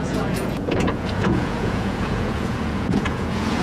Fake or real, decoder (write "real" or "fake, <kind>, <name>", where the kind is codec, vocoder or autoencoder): fake, vocoder, Vocos